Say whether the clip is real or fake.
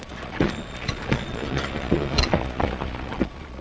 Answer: fake